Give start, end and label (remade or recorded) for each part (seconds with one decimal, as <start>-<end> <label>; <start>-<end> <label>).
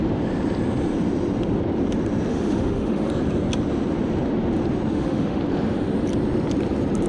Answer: 0.0-2.3 recorded; 2.3-3.1 remade; 3.1-4.9 recorded; 4.9-5.4 remade; 5.4-7.1 recorded